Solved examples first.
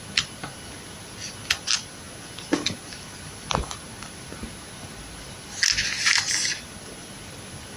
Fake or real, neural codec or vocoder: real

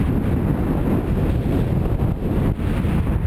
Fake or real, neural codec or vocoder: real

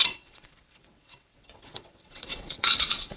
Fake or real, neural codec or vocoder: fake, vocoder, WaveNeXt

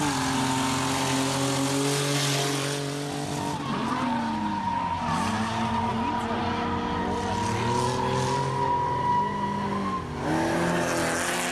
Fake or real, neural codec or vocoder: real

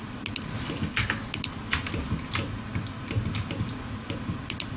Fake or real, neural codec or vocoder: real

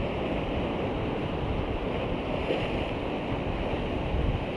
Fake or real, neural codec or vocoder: real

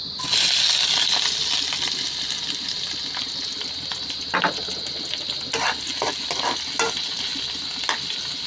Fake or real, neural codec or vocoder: real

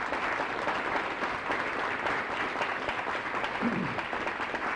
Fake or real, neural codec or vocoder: real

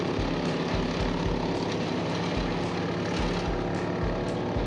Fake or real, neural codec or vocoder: real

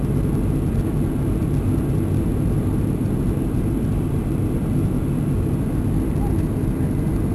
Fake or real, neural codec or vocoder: real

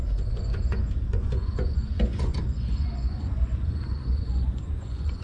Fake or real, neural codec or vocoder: fake, vocoder, Vocos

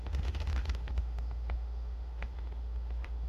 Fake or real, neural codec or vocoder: fake, autoencoder, DAC-VAE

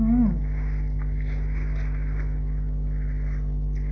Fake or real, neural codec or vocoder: real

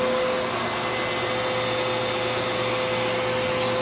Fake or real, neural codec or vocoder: real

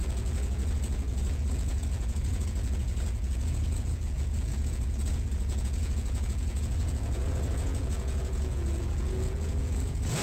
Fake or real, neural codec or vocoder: fake, vocoder, Vocos